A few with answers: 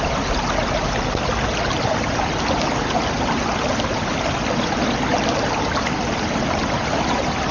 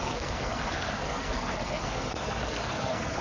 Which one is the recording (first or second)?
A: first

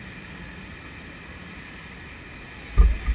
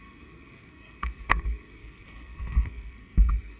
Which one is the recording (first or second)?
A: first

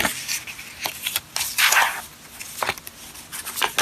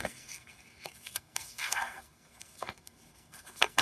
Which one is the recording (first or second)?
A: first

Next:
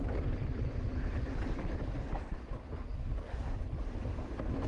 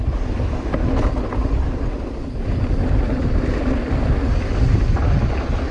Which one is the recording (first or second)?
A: second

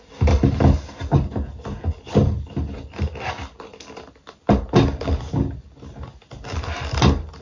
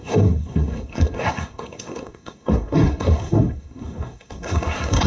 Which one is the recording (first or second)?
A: first